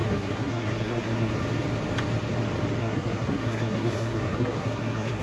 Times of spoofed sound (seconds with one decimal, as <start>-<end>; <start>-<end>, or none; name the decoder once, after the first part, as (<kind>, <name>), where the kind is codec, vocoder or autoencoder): 0.0-1.3 (codec, SNAC); 2.8-5.2